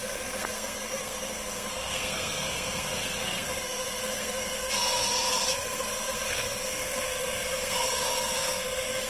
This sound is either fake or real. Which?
fake